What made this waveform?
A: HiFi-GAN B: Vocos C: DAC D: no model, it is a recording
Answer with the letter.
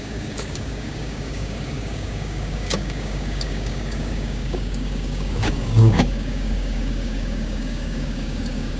C